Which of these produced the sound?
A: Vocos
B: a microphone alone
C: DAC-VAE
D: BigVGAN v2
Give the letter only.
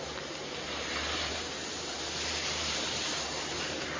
D